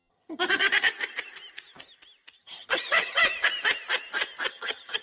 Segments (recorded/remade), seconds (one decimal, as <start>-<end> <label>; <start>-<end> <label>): 0.0-0.9 remade; 0.9-2.4 recorded; 2.4-3.2 remade; 3.2-4.5 recorded; 4.5-5.0 remade